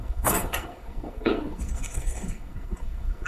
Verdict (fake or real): fake